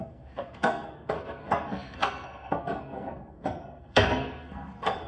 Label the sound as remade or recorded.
remade